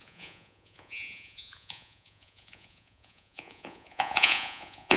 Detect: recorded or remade remade